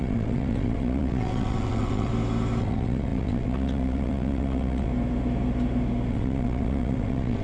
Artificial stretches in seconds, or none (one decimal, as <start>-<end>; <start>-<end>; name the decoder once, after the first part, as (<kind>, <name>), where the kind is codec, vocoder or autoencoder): 0.0-2.1 (vocoder, WaveNeXt); 2.6-4.9; 6.1-7.4